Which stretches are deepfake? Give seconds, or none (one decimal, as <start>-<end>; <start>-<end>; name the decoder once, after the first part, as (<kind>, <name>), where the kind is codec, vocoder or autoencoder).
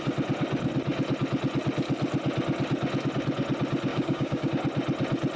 3.9-4.5 (codec, DAC)